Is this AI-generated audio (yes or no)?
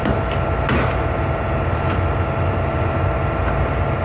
no